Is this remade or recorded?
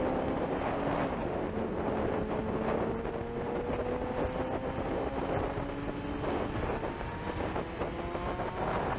recorded